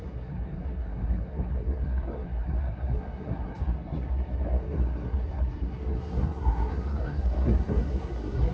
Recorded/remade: remade